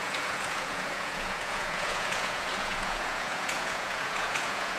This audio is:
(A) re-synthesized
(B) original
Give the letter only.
A